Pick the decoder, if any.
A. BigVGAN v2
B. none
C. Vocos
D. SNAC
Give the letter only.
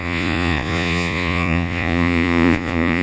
C